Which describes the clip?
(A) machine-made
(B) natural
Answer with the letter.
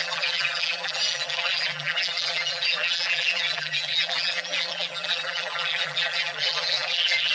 A